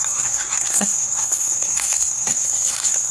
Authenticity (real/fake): fake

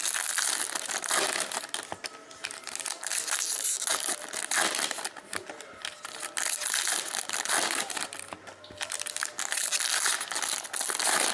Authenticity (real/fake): real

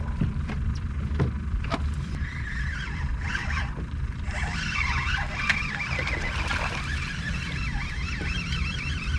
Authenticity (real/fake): real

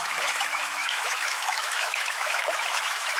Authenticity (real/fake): fake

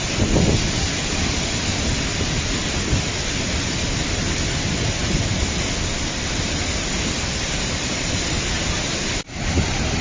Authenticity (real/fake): fake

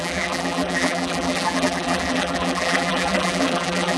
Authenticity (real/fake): fake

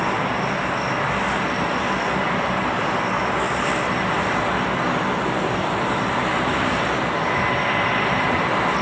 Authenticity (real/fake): real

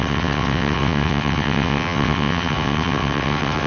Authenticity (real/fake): fake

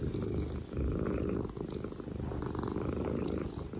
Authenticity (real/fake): real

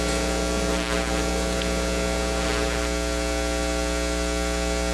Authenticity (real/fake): real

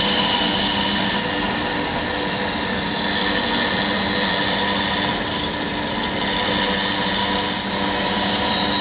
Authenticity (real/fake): real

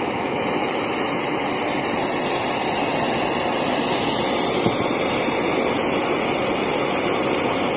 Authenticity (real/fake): real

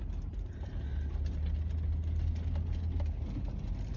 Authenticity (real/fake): real